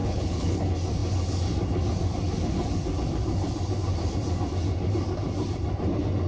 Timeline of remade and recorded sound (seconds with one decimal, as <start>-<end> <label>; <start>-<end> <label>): 0.0-0.6 remade; 0.6-6.3 recorded